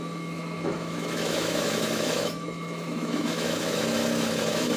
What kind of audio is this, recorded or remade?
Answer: remade